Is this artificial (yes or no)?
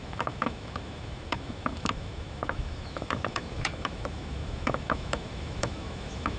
yes